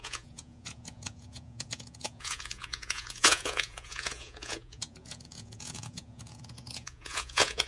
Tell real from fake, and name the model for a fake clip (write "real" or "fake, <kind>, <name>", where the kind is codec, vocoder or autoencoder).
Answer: fake, vocoder, Vocos